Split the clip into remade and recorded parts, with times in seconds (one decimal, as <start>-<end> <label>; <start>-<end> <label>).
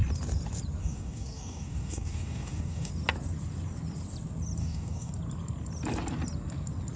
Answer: 0.0-0.8 recorded; 0.8-2.9 remade; 2.9-4.6 recorded; 4.6-5.1 remade; 5.1-7.0 recorded